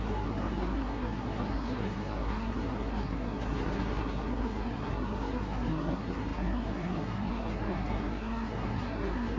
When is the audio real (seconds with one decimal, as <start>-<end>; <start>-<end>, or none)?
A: none